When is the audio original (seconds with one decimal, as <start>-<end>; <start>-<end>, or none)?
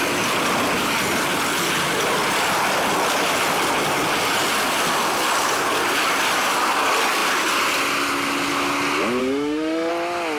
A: 0.0-9.2; 9.9-10.4